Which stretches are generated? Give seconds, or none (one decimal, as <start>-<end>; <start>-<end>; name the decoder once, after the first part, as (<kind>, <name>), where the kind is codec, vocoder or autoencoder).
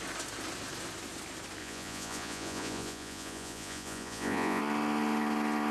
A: 1.6-4.6 (vocoder, Vocos)